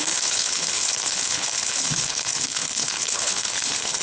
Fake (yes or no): yes